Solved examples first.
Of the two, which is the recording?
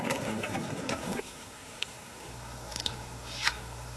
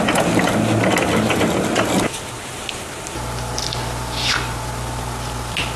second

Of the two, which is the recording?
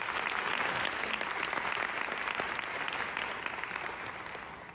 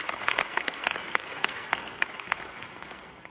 first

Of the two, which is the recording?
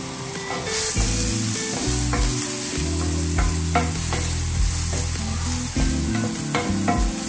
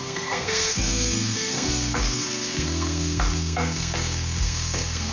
first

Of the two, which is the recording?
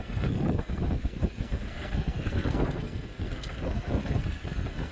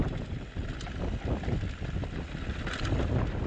second